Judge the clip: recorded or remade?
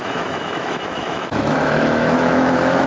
remade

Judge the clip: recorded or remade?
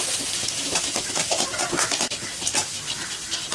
recorded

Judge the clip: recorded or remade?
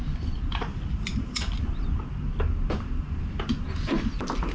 recorded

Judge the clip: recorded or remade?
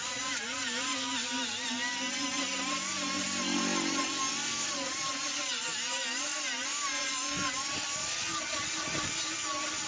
recorded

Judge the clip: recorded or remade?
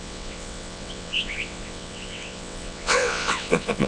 remade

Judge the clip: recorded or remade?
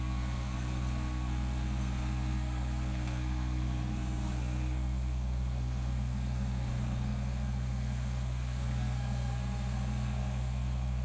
remade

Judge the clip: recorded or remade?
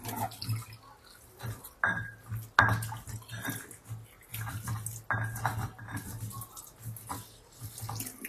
recorded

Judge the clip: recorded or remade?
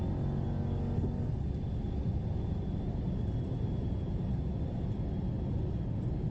recorded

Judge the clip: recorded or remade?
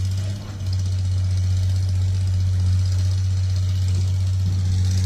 recorded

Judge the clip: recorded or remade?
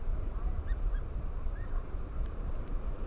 remade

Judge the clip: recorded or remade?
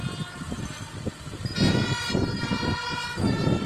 recorded